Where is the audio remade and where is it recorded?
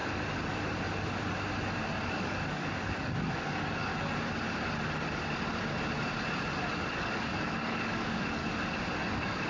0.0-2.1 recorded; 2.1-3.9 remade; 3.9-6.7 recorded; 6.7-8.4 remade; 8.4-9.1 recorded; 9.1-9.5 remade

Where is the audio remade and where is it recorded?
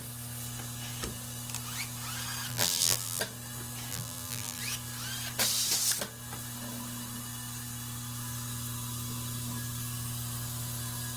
0.0-2.5 recorded; 2.5-3.2 remade; 3.2-3.9 recorded; 3.9-4.6 remade; 4.6-11.2 recorded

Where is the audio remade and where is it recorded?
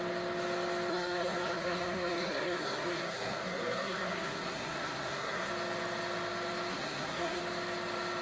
0.0-0.9 recorded; 0.9-5.5 remade; 5.5-6.7 recorded; 6.7-7.4 remade; 7.4-8.2 recorded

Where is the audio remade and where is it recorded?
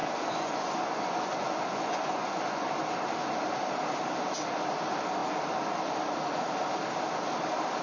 0.0-2.7 remade; 2.7-7.8 recorded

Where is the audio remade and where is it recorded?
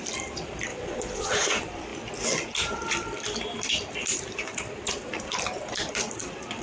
0.0-0.7 recorded; 0.7-1.3 remade; 1.3-6.6 recorded